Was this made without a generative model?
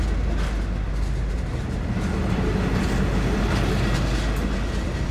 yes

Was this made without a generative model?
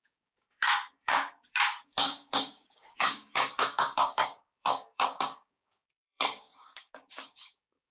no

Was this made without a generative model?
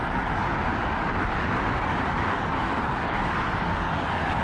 no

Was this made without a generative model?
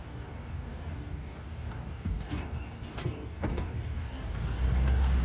no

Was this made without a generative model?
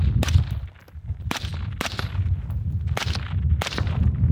yes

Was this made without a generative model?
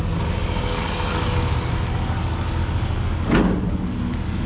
no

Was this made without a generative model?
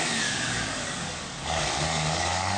no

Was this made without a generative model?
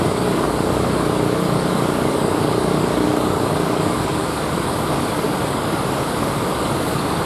no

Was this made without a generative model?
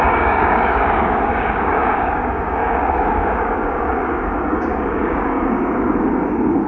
no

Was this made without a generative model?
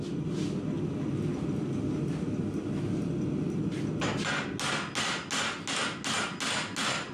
yes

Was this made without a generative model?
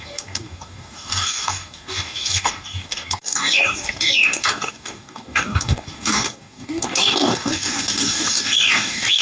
no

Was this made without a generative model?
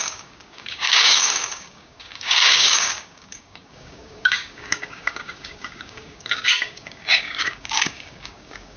no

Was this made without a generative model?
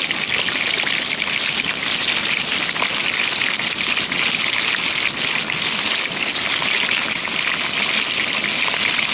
yes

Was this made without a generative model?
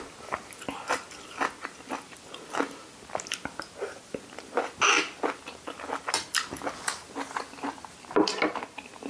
yes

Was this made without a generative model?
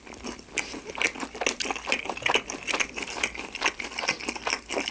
yes